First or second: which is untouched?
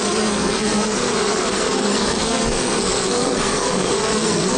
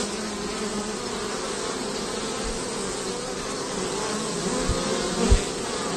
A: second